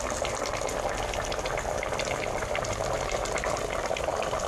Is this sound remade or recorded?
recorded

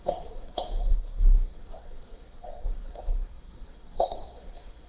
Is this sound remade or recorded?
remade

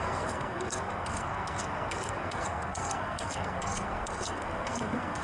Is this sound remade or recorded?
remade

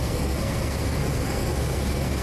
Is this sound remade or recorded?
remade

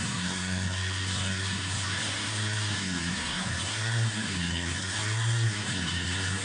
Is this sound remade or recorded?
remade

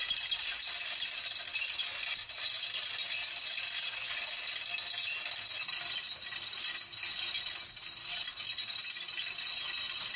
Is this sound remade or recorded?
recorded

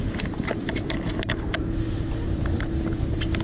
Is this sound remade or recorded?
recorded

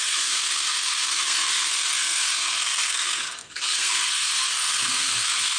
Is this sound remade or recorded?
remade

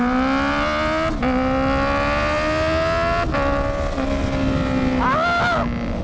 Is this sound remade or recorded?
recorded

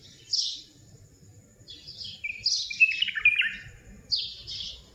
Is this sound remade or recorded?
recorded